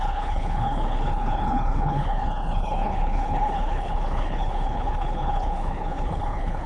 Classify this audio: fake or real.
fake